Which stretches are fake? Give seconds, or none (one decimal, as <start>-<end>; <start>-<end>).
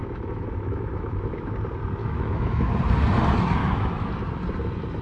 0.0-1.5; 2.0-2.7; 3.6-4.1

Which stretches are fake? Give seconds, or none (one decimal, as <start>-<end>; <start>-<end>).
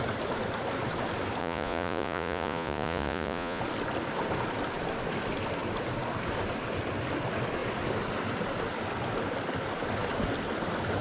1.4-3.6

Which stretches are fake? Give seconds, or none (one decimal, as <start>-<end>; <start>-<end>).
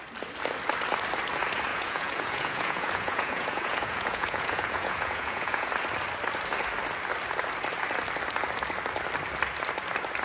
1.7-5.7